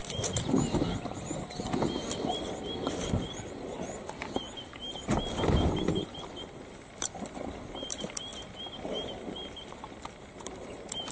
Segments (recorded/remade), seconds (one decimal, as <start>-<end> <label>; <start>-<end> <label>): 0.0-8.3 remade; 8.3-9.3 recorded; 9.3-11.1 remade